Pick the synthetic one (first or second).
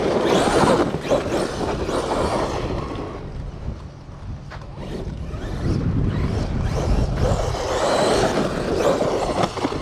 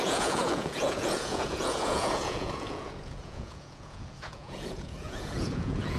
second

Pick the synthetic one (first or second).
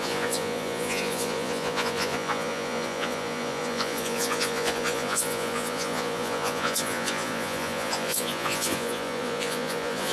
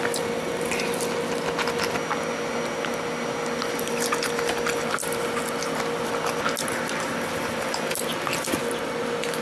first